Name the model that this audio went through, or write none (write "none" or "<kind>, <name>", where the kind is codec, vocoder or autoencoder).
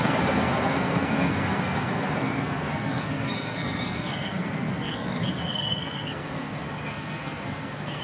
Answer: codec, SNAC